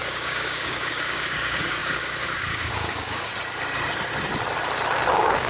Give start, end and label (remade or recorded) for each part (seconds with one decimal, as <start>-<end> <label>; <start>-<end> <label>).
0.0-3.3 remade; 3.3-5.1 recorded; 5.1-5.5 remade